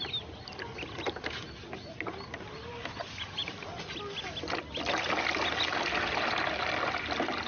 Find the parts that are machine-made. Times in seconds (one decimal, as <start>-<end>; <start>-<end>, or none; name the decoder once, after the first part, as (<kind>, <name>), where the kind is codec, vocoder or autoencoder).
none